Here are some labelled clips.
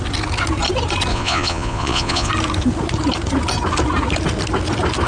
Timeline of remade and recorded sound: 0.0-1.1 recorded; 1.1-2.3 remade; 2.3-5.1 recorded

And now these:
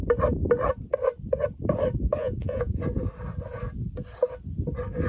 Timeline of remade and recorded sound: 0.0-2.2 recorded; 2.2-2.8 remade; 2.8-5.1 recorded

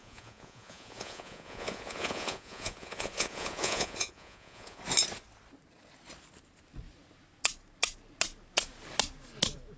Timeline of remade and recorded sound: 0.0-4.8 remade; 4.8-9.8 recorded

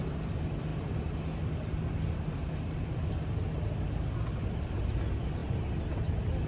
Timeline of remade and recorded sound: 0.0-6.5 recorded

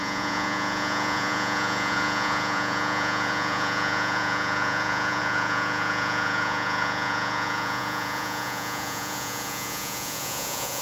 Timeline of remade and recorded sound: 0.0-10.8 remade

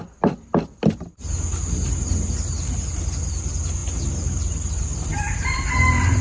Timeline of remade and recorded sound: 0.0-6.2 recorded